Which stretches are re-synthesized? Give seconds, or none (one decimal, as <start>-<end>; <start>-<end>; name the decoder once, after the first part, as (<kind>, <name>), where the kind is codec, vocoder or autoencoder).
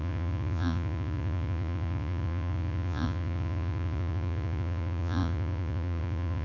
0.0-6.4 (vocoder, Vocos)